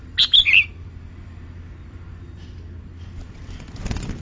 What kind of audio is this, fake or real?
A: real